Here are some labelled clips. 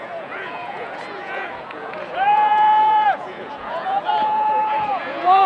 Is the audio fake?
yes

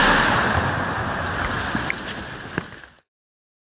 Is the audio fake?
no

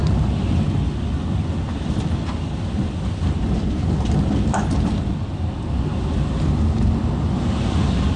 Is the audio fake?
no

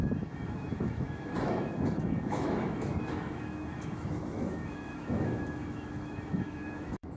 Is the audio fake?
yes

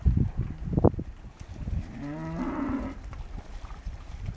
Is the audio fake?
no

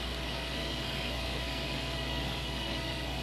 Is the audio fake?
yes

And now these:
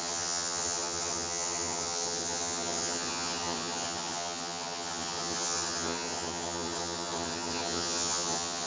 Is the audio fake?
yes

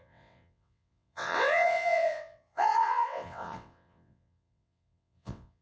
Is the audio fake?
yes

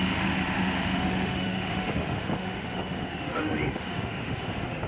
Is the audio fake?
yes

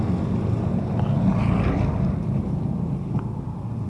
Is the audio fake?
no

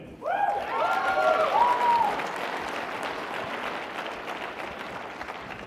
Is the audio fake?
no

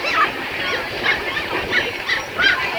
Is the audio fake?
no